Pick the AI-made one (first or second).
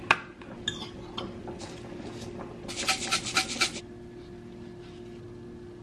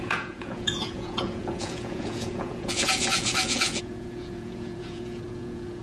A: second